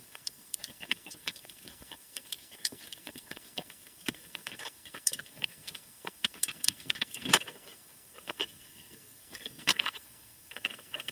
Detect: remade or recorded remade